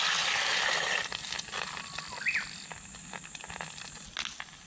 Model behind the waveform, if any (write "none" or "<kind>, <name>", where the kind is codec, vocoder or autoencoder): none